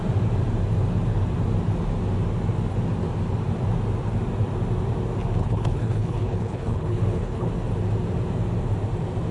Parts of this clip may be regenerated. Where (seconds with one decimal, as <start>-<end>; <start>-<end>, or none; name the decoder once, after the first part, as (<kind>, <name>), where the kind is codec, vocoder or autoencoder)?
5.4-7.5 (codec, HILCodec)